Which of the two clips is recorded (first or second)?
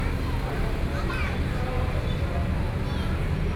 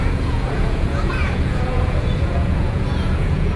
first